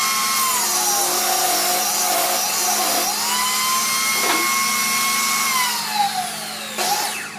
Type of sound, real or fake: real